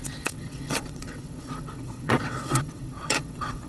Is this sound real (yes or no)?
no